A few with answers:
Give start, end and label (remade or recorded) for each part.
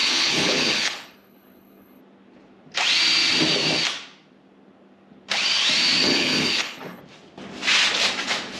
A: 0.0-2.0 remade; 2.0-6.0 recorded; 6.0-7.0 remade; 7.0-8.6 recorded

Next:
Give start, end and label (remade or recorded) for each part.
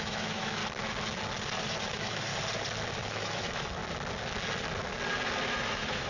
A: 0.0-0.6 remade; 0.6-1.8 recorded; 1.8-2.3 remade; 2.3-3.0 recorded; 3.0-3.8 remade; 3.8-5.5 recorded; 5.5-6.1 remade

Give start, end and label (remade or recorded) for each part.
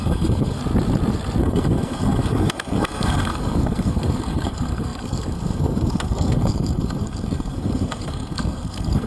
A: 0.0-0.6 remade; 0.6-1.4 recorded; 1.4-9.1 remade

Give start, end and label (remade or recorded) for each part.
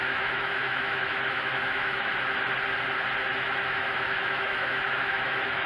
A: 0.0-2.1 remade; 2.1-3.3 recorded; 3.3-5.7 remade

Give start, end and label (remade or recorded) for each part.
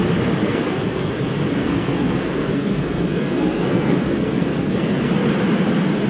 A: 0.0-0.4 recorded; 0.4-1.1 remade; 1.1-1.6 recorded; 1.6-5.1 remade; 5.1-6.1 recorded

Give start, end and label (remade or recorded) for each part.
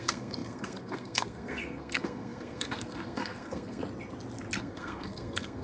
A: 0.0-3.8 remade; 3.8-4.6 recorded; 4.6-5.6 remade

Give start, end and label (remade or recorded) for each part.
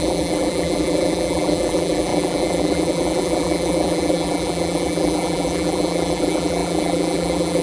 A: 0.0-7.6 remade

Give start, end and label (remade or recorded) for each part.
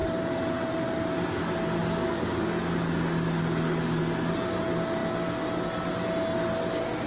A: 0.0-1.8 recorded; 1.8-4.0 remade; 4.0-7.1 recorded